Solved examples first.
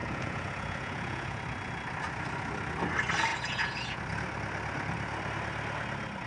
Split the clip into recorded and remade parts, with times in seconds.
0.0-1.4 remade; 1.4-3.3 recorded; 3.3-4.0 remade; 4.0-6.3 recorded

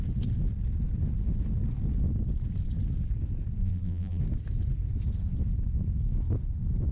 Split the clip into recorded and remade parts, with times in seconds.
0.0-3.6 recorded; 3.6-4.2 remade; 4.2-6.9 recorded